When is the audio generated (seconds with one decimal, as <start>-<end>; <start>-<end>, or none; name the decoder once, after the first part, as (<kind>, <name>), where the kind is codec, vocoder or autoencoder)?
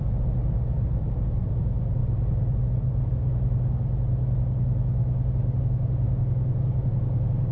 none